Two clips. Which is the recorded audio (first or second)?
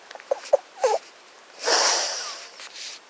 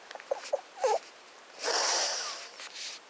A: second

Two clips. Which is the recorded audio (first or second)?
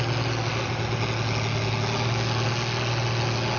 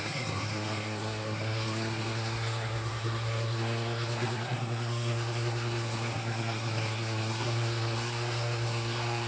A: first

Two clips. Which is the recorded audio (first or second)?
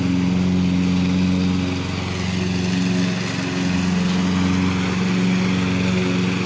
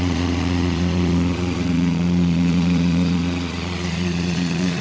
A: first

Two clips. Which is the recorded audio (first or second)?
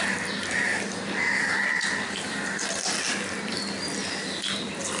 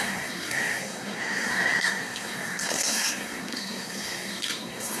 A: first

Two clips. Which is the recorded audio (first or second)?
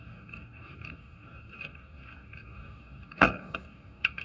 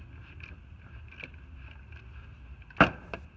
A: second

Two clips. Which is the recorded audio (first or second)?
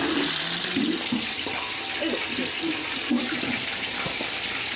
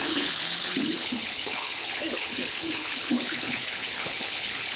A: first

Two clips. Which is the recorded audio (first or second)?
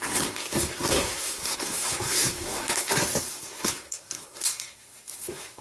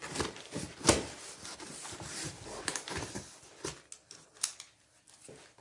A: second